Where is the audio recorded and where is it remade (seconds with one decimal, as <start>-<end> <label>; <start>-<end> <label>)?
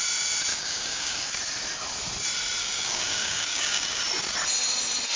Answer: 0.0-0.5 recorded; 0.5-1.4 remade; 1.4-2.6 recorded; 2.6-4.0 remade; 4.0-5.2 recorded